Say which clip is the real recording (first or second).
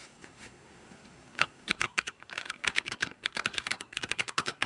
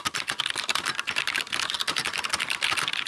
second